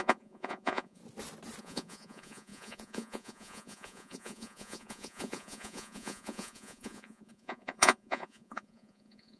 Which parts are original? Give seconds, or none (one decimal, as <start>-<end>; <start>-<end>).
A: 1.0-1.6